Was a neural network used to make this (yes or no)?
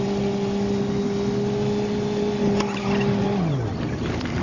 no